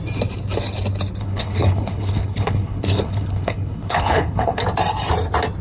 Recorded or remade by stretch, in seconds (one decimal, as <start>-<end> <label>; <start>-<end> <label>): 0.0-1.2 recorded; 1.2-4.6 remade; 4.6-5.6 recorded